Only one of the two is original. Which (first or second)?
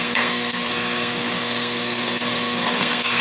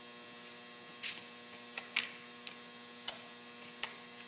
second